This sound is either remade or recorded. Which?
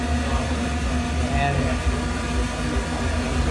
recorded